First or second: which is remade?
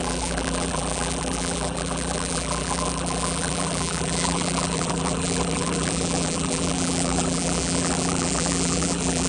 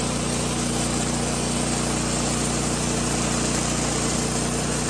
first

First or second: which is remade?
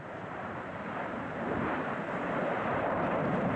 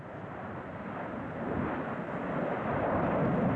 first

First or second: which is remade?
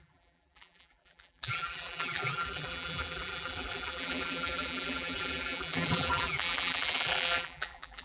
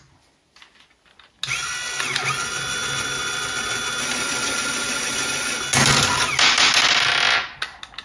first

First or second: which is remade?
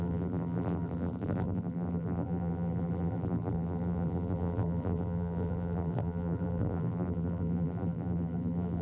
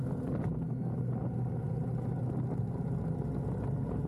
first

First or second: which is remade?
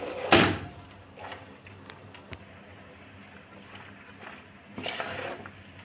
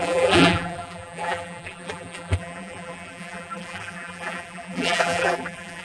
second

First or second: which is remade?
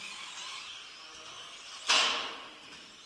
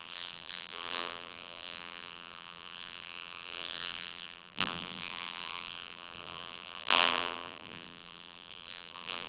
second